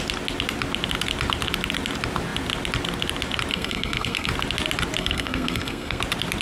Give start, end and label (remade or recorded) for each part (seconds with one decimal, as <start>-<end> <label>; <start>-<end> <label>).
0.0-3.5 recorded; 3.5-4.3 remade; 4.3-5.0 recorded; 5.0-6.0 remade; 6.0-6.4 recorded